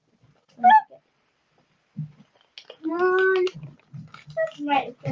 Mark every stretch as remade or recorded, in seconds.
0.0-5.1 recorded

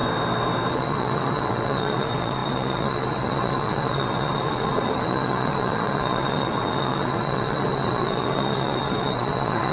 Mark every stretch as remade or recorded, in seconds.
0.0-0.7 recorded; 0.7-9.7 remade

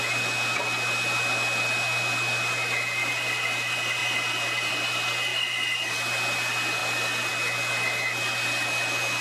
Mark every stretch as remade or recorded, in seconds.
0.0-9.2 recorded

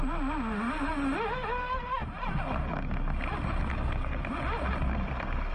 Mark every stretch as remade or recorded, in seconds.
0.0-3.7 recorded; 3.7-4.2 remade; 4.2-5.5 recorded